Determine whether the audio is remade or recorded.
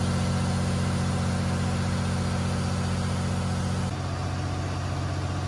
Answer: recorded